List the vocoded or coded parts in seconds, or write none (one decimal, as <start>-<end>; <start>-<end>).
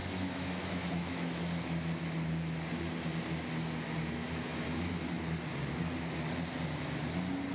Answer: 0.0-1.4